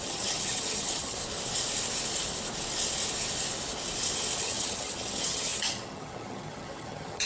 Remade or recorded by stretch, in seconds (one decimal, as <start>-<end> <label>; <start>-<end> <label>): 0.0-1.2 remade; 1.2-4.4 recorded; 4.4-7.3 remade